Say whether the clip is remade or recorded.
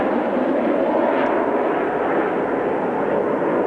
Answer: recorded